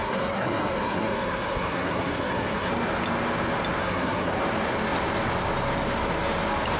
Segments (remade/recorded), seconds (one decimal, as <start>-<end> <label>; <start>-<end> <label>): 0.0-2.7 remade; 2.7-3.8 recorded; 3.8-4.3 remade; 4.3-6.8 recorded

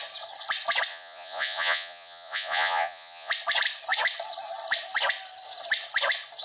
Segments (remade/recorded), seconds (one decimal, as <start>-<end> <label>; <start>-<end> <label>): 0.0-0.9 recorded; 0.9-3.3 remade; 3.3-6.4 recorded